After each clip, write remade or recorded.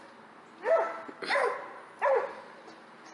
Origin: recorded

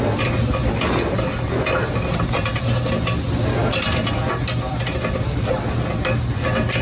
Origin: recorded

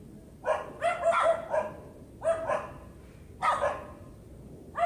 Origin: recorded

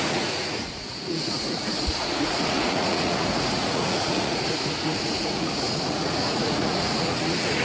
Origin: remade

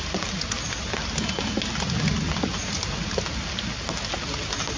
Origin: recorded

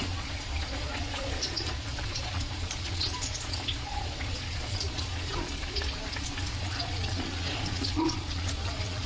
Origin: remade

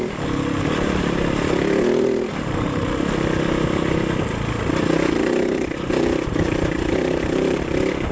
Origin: recorded